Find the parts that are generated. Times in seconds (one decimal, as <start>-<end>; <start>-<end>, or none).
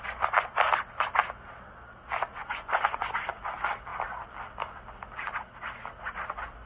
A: 2.4-3.4